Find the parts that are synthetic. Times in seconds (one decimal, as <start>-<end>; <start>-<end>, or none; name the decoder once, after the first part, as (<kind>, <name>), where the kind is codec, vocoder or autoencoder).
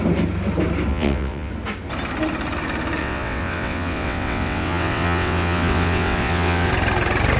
0.9-1.5 (vocoder, WaveNeXt); 3.0-6.7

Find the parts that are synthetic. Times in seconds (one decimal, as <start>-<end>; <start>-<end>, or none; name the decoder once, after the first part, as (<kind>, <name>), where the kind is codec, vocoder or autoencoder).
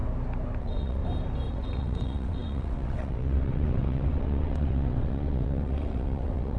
0.6-1.0 (vocoder, WaveNeXt); 1.5-6.6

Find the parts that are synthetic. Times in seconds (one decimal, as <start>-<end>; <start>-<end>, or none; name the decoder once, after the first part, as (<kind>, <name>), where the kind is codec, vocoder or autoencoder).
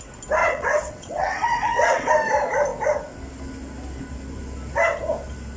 0.4-2.1 (vocoder, WaveNeXt)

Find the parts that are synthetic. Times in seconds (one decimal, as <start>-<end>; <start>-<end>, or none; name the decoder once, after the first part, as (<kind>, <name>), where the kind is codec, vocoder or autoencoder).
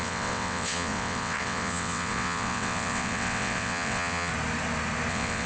0.0-4.3 (vocoder, WaveNeXt); 5.1-5.5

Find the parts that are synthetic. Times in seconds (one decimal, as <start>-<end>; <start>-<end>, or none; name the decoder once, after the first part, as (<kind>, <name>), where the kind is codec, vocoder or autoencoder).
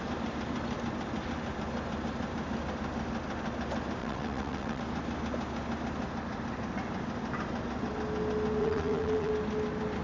4.0-4.8 (vocoder, WaveNeXt); 8.6-9.3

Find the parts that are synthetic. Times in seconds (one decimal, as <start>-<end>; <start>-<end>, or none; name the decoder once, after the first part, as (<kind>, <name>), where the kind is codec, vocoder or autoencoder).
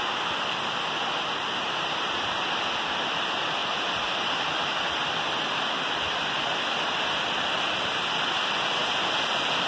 none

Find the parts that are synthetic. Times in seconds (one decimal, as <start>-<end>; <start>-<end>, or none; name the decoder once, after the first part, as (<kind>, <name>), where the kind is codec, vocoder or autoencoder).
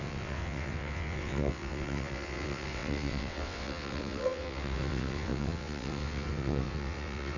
0.0-7.4 (vocoder, WaveNeXt)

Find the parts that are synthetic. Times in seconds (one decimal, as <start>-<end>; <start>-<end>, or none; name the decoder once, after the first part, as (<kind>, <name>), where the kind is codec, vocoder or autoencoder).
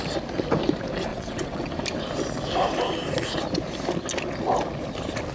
1.1-1.7 (vocoder, WaveNeXt)